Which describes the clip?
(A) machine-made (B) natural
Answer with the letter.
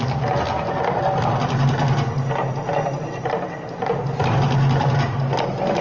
B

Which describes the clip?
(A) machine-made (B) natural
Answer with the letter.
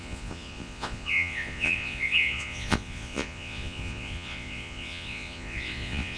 A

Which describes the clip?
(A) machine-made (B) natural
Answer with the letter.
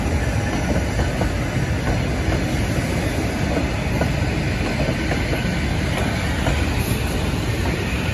B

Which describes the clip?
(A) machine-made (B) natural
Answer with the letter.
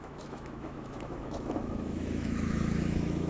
A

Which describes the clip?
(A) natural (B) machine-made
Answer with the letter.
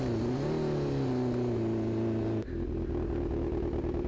A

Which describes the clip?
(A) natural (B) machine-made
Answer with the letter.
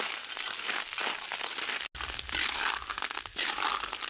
A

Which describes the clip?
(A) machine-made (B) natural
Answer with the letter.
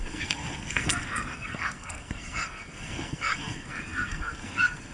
A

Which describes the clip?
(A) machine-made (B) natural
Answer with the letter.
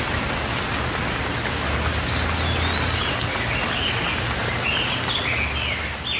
B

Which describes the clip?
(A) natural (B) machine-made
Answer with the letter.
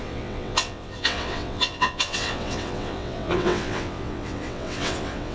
B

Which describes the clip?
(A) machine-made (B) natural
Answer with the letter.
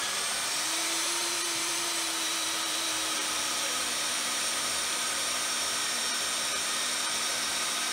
A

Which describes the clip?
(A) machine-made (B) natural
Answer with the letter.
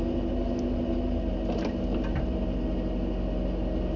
B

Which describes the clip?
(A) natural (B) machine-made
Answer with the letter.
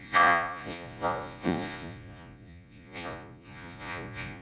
B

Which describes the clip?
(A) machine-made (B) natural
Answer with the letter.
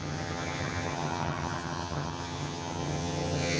A